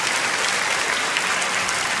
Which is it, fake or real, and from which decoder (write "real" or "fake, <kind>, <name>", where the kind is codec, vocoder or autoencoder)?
fake, vocoder, BigVGAN v2